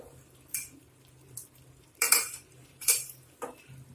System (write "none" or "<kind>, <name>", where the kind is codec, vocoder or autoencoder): vocoder, BigVGAN v2